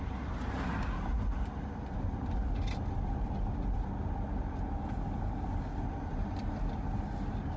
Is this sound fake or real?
real